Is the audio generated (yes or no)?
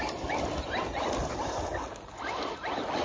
no